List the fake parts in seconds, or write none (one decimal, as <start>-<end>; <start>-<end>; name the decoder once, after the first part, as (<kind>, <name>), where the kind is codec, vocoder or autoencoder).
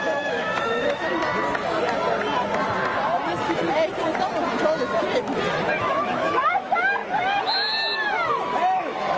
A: 0.0-1.1 (autoencoder, DAC-VAE); 5.8-7.0; 8.1-9.2